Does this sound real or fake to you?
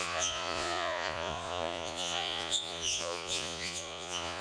fake